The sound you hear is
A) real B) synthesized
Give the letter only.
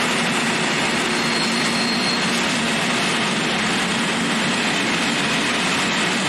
A